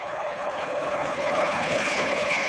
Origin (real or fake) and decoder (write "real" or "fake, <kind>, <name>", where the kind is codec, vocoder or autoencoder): fake, codec, HILCodec